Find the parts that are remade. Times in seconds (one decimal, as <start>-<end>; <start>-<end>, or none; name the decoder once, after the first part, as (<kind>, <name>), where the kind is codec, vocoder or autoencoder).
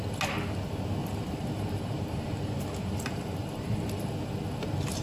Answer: 1.0-4.0 (vocoder, BigVGAN v2)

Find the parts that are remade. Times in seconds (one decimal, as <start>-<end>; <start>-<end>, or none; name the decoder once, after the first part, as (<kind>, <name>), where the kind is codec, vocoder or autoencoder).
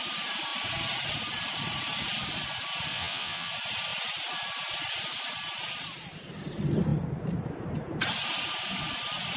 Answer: 2.9-3.5 (vocoder, WaveNeXt)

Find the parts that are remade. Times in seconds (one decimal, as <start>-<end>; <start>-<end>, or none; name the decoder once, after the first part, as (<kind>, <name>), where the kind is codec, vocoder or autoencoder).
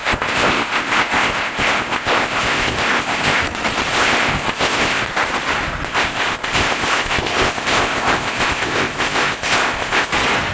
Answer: 0.0-3.4 (codec, ZipCodec); 3.9-5.0; 5.9-10.1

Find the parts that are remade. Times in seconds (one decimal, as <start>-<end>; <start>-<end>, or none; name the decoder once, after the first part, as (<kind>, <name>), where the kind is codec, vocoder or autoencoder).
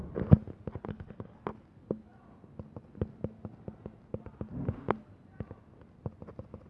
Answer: 0.9-1.4 (codec, HILCodec)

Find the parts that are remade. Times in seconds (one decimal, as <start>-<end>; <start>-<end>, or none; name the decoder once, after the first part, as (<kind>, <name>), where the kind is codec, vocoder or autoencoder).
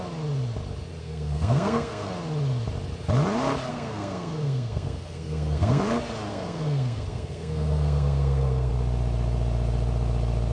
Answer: 1.0-2.1 (codec, SNAC); 3.7-5.8; 6.3-8.7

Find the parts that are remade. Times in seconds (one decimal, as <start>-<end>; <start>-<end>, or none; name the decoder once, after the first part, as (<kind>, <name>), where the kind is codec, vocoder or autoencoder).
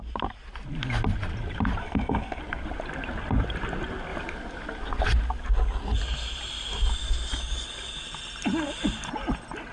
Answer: 1.8-2.4 (codec, SNAC)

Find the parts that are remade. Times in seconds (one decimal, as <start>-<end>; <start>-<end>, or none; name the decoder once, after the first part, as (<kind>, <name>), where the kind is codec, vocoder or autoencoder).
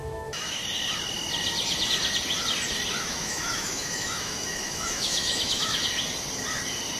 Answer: 0.0-0.6 (autoencoder, DAC-VAE); 3.0-5.7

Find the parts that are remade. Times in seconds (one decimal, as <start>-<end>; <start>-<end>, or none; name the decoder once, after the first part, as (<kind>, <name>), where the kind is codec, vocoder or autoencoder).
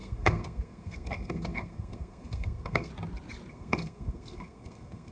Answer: 0.0-2.9 (codec, SNAC); 3.5-5.1